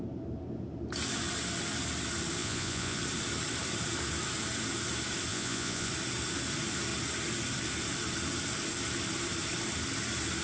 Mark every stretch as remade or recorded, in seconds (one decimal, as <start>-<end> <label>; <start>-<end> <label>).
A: 0.0-2.4 recorded; 2.4-3.0 remade; 3.0-5.3 recorded; 5.3-5.9 remade; 5.9-10.4 recorded